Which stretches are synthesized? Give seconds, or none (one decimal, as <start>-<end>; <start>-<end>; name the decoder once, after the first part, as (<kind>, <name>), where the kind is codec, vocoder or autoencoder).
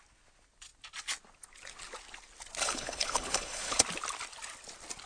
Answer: 2.6-3.8 (codec, HILCodec)